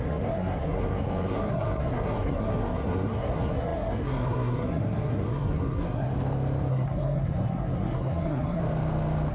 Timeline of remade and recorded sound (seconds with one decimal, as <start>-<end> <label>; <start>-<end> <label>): 0.0-6.1 remade; 6.1-6.7 recorded; 6.7-8.6 remade; 8.6-9.3 recorded